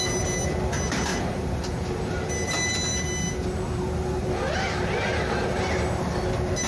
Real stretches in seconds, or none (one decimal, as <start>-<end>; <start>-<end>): 0.0-1.1; 2.0-6.7